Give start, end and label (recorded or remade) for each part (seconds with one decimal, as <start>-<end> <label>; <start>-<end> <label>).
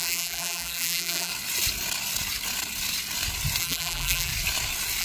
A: 0.0-1.3 remade; 1.3-3.6 recorded; 3.6-4.3 remade; 4.3-5.0 recorded